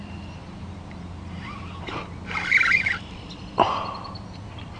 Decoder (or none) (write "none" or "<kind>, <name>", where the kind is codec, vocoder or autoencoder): none